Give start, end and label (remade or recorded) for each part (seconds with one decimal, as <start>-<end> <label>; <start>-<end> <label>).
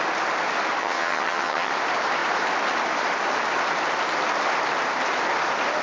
0.0-0.8 recorded; 0.8-1.7 remade; 1.7-5.8 recorded